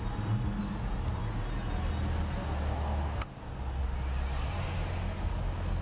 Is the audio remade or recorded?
recorded